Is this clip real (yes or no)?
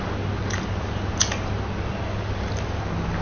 yes